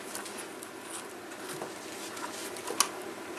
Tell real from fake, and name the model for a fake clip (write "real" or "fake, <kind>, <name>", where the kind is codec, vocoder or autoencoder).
real